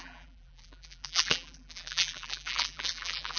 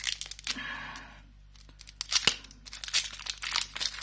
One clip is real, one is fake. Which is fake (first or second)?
first